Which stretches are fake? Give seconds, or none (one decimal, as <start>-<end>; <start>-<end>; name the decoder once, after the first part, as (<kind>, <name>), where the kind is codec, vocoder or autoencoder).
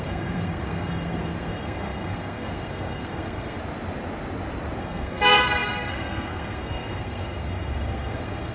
0.0-3.6 (codec, SNAC); 4.8-8.5